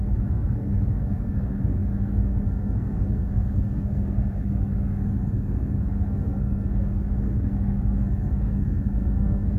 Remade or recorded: remade